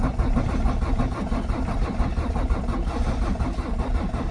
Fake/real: real